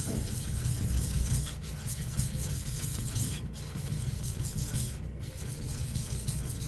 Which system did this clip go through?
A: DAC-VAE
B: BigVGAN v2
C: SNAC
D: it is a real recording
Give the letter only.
C